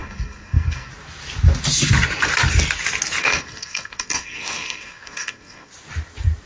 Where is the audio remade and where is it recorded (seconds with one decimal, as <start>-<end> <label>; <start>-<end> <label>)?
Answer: 0.0-0.9 remade; 0.9-3.2 recorded; 3.2-5.7 remade; 5.7-6.5 recorded